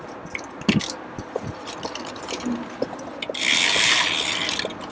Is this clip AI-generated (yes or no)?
no